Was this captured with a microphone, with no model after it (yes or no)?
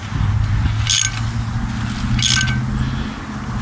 yes